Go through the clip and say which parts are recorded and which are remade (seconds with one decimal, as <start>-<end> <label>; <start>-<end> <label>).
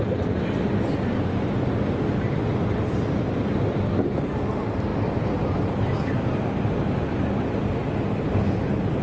0.0-9.0 recorded